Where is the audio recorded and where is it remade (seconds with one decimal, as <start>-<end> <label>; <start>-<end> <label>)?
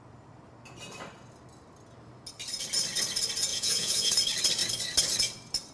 0.0-3.5 recorded; 3.5-4.1 remade; 4.1-5.7 recorded